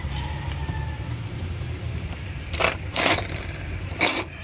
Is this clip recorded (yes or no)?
no